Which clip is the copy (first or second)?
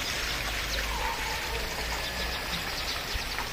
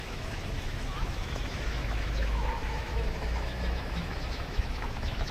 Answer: second